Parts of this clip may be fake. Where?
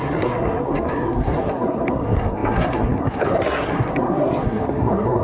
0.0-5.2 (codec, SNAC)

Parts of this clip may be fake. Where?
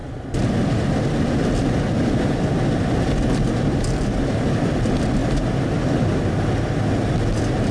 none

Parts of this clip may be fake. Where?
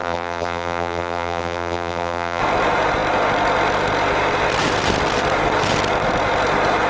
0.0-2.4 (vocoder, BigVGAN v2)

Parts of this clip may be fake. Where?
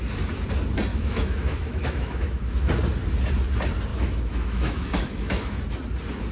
0.9-2.7 (autoencoder, DAC-VAE); 3.9-5.6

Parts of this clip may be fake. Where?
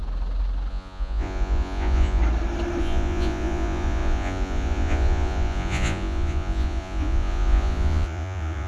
0.7-2.2 (vocoder, Vocos); 2.8-8.7